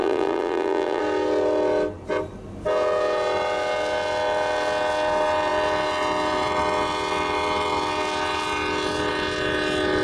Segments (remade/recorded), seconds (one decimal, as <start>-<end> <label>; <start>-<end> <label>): 0.0-1.0 remade; 1.0-10.0 recorded